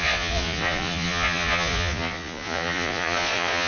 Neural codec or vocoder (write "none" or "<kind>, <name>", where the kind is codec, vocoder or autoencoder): vocoder, Vocos